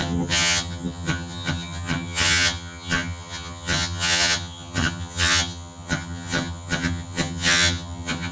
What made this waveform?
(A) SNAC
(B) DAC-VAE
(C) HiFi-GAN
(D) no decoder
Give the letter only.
C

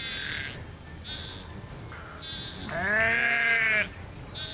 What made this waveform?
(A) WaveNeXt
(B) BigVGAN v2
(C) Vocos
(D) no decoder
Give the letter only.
D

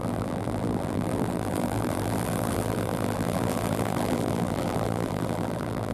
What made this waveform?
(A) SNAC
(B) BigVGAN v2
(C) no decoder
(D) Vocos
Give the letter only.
B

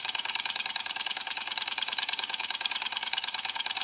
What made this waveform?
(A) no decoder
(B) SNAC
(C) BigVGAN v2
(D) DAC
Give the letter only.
D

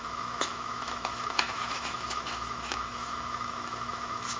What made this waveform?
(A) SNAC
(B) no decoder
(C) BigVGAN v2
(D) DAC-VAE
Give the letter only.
D